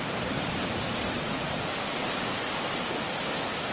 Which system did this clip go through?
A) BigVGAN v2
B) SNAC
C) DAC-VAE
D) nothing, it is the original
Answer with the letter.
D